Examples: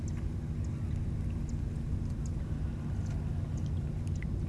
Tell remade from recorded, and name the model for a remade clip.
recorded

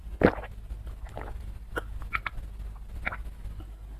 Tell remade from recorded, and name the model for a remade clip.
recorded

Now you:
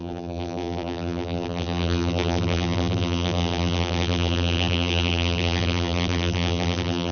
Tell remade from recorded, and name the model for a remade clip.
remade, vocoder, BigVGAN v2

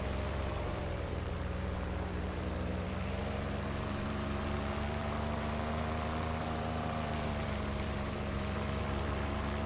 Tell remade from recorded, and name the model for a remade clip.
remade, vocoder, BigVGAN v2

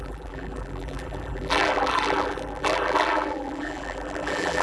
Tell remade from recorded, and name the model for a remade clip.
remade, vocoder, BigVGAN v2